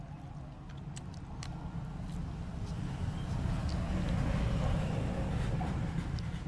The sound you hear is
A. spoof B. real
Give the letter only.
B